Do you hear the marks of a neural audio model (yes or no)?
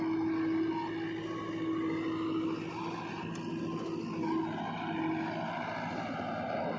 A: no